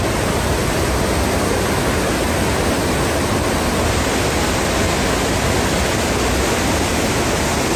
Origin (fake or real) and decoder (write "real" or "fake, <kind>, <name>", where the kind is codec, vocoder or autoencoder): real